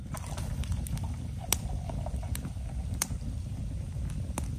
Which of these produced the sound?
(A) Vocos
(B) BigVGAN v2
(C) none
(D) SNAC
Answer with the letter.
C